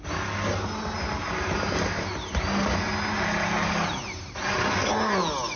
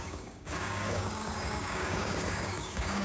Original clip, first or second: first